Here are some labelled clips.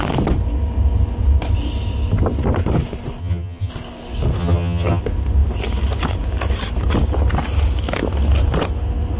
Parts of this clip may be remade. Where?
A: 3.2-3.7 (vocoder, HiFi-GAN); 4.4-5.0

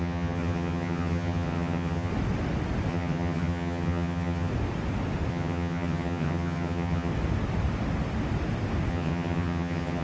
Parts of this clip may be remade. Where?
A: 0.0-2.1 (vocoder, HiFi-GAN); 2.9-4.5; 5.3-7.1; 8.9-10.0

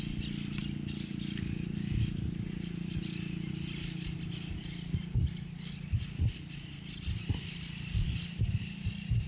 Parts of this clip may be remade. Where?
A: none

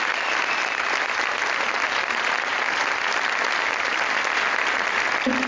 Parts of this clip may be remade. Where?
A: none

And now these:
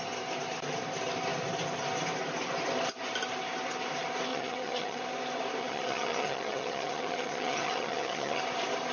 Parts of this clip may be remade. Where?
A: 4.3-5.0 (vocoder, HiFi-GAN); 5.6-8.4

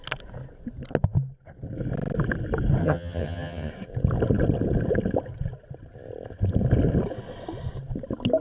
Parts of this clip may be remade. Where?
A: 2.8-3.7 (vocoder, HiFi-GAN)